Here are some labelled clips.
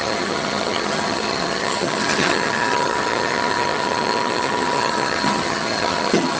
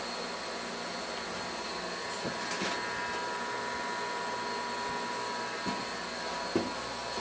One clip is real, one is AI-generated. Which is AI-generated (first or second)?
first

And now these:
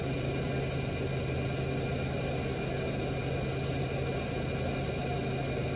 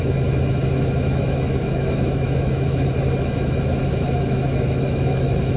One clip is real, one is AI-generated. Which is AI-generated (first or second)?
second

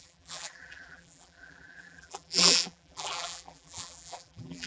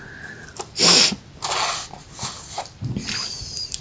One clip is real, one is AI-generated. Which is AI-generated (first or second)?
first